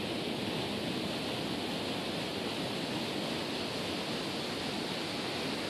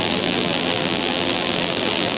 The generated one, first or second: second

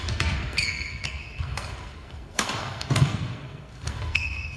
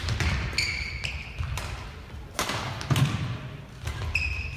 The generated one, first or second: first